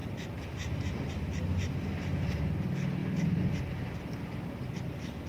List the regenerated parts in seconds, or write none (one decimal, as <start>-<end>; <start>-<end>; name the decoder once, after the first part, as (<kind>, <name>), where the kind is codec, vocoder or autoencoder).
0.0-1.1 (vocoder, BigVGAN v2)